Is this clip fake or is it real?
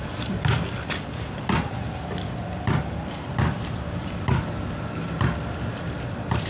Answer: real